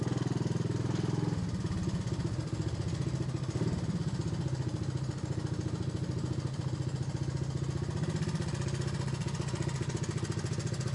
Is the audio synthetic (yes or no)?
no